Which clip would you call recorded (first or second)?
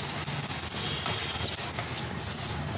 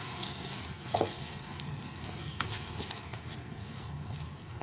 first